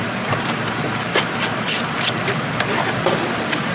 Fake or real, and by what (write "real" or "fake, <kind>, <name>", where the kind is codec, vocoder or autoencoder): real